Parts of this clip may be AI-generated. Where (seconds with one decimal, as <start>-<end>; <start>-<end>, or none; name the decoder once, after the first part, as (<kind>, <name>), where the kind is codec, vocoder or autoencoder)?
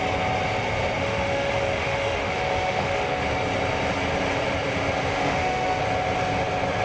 1.0-3.2 (autoencoder, DAC-VAE); 5.1-5.8